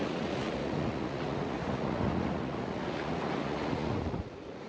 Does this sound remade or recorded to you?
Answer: remade